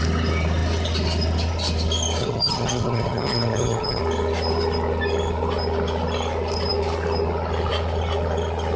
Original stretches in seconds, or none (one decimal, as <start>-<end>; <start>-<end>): 0.0-2.2; 4.0-8.8